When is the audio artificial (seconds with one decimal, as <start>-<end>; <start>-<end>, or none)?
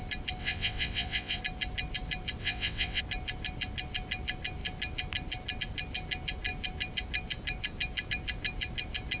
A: 0.4-1.4; 2.4-3.0